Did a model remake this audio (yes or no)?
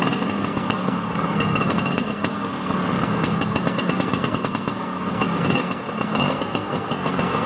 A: yes